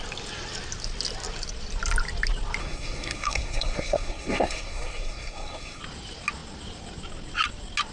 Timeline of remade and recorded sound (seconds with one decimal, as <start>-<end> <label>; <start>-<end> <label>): 0.0-2.6 recorded; 2.6-5.8 remade; 5.8-7.9 recorded